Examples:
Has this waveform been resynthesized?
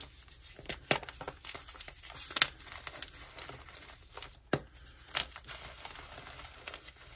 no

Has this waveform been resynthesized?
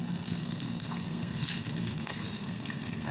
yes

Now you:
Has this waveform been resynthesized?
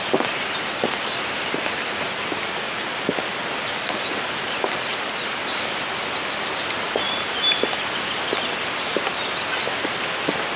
no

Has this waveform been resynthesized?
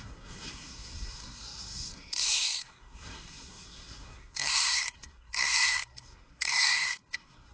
yes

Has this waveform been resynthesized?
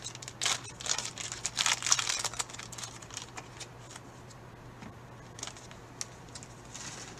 no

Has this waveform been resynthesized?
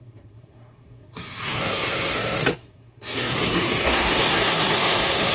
yes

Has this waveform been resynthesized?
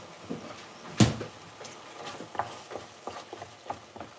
no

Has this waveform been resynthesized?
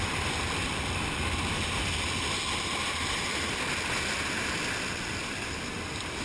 no